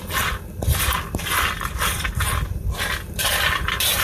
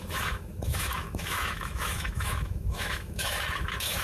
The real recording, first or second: first